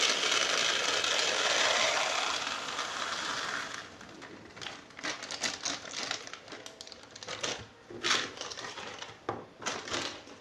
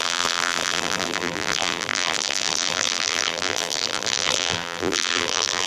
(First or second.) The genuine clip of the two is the first